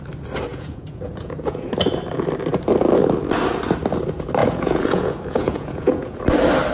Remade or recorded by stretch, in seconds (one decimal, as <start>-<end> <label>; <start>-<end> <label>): 0.0-0.5 recorded; 0.5-1.9 remade; 1.9-4.4 recorded; 4.4-6.2 remade; 6.2-6.7 recorded

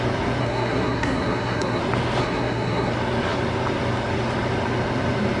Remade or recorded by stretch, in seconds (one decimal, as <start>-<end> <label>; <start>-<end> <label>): 0.0-0.4 recorded; 0.4-1.8 remade; 1.8-2.2 recorded; 2.2-2.9 remade; 2.9-5.4 recorded